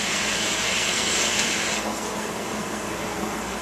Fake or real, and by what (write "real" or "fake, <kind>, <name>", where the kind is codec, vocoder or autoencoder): fake, codec, SNAC